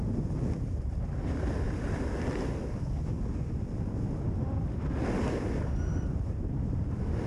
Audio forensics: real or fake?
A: real